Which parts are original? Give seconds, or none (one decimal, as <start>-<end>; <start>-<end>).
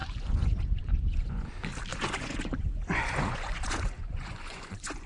1.5-1.9